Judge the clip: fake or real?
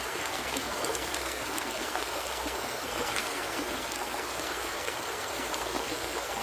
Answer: fake